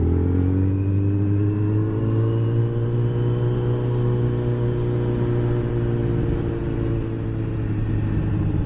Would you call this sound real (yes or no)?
yes